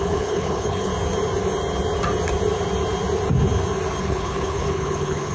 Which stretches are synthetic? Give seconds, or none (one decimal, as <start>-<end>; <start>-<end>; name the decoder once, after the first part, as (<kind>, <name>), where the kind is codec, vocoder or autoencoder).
0.0-0.9 (codec, HILCodec); 4.0-5.3